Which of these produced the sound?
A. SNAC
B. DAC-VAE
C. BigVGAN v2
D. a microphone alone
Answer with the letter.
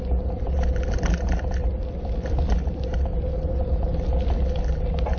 D